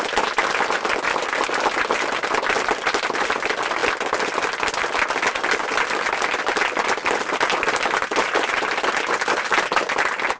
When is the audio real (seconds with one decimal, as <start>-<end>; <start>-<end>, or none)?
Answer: 0.0-10.4